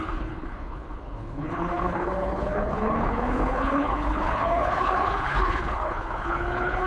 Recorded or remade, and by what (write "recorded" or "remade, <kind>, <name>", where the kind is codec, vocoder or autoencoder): remade, codec, HILCodec